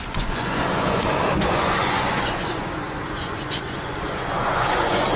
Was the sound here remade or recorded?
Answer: remade